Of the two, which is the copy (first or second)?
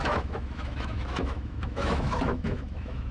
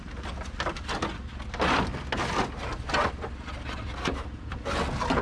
first